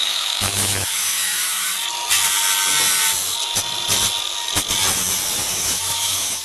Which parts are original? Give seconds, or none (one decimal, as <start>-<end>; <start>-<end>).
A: 1.7-5.5